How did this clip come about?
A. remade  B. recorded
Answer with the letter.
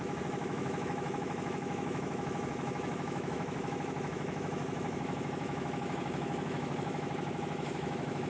A